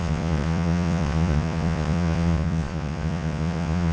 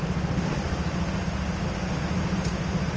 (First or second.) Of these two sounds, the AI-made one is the first